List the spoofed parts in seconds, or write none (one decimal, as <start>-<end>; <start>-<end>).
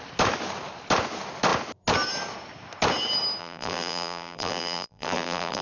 3.4-5.6